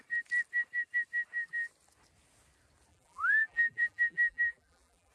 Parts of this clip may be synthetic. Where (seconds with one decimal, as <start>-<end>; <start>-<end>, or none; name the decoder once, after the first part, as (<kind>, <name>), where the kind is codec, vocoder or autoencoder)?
2.9-5.1 (vocoder, BigVGAN v2)